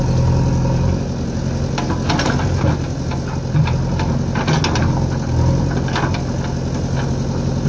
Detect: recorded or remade recorded